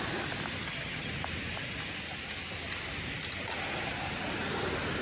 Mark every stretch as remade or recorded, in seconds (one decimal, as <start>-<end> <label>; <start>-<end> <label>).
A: 0.0-0.6 recorded; 0.6-1.1 remade; 1.1-5.0 recorded